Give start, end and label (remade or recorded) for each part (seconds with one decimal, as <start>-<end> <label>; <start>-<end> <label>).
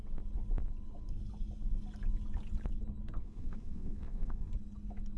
0.0-3.2 recorded; 3.2-4.5 remade; 4.5-5.2 recorded